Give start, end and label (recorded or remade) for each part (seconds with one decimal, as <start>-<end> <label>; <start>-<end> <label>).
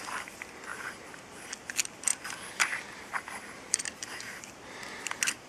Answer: 0.0-0.7 recorded; 0.7-1.2 remade; 1.2-2.1 recorded; 2.1-4.4 remade; 4.4-5.5 recorded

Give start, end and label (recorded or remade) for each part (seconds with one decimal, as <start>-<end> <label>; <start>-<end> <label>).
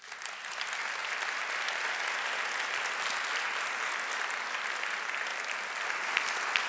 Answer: 0.0-6.7 recorded